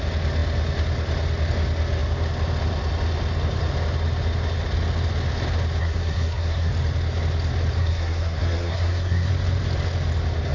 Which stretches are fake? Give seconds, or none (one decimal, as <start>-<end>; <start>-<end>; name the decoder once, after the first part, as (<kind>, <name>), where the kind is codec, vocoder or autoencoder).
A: 5.8-6.7 (codec, SNAC); 7.8-9.3